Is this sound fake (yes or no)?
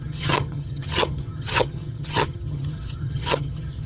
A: yes